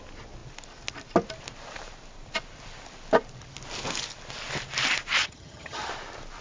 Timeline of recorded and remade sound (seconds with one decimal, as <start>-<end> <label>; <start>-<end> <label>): 0.0-5.2 recorded; 5.2-5.9 remade; 5.9-6.4 recorded